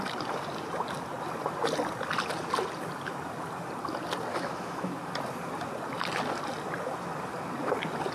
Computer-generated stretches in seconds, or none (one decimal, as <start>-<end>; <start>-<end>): 4.3-5.1